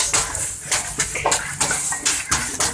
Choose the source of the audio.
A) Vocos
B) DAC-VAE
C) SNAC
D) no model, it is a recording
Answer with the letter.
D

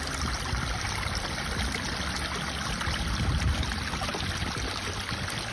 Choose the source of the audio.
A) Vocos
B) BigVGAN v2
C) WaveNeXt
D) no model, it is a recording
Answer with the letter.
D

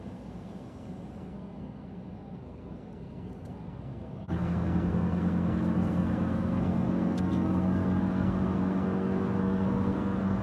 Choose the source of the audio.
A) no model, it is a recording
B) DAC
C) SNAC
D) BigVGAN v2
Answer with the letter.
C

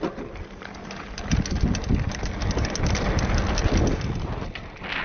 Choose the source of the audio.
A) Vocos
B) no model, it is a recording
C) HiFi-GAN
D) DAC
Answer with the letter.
B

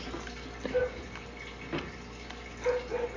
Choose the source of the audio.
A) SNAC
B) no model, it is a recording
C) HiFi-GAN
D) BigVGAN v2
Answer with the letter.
B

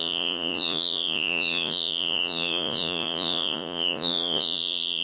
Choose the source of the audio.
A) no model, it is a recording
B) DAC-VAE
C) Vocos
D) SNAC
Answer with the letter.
C